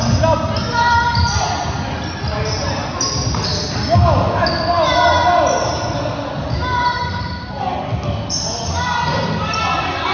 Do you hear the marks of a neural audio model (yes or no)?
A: no